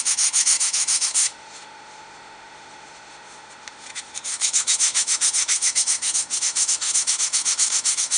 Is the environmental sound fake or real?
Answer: fake